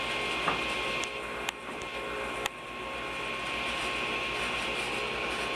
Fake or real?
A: real